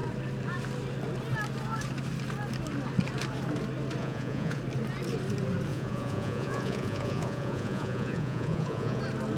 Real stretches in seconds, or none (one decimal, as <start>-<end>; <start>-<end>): 0.0-4.0; 4.6-5.7; 9.0-9.4